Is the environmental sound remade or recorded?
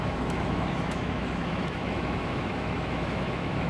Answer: remade